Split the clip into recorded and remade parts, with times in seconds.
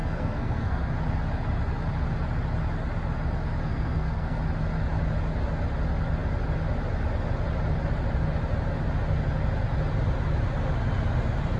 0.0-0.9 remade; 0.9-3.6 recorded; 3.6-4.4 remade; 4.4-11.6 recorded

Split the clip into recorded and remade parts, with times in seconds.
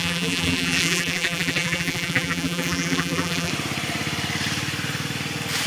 0.0-3.5 remade; 3.5-5.7 recorded